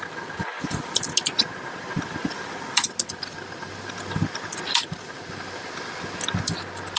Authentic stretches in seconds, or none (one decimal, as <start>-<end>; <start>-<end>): 0.0-7.0